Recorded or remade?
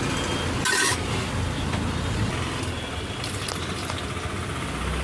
recorded